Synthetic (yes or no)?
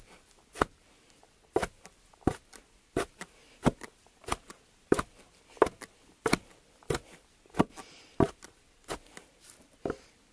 no